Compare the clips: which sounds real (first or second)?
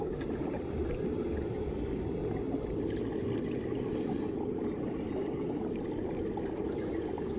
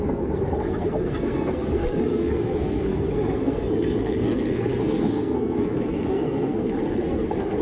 first